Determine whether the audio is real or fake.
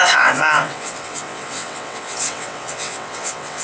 fake